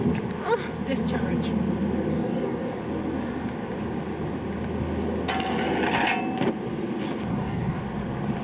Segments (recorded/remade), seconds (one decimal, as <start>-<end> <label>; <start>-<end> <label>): 0.0-2.1 recorded; 2.1-2.8 remade; 2.8-7.3 recorded; 7.3-7.8 remade; 7.8-8.4 recorded